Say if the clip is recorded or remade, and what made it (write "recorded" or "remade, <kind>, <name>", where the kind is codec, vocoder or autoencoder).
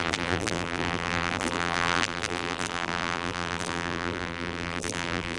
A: remade, vocoder, BigVGAN v2